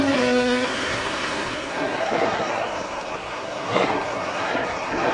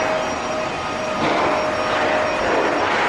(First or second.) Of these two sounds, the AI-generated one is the first